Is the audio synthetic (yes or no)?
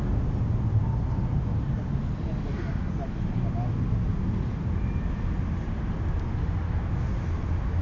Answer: no